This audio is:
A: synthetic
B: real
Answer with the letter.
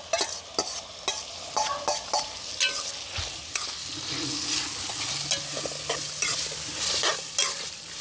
B